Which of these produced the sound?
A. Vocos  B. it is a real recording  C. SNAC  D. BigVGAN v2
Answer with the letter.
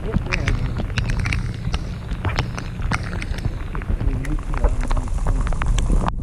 B